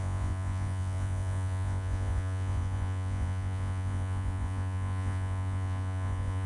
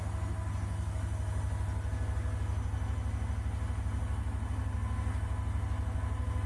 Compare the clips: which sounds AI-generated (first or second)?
first